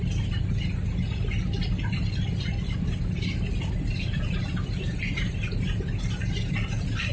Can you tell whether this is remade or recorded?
recorded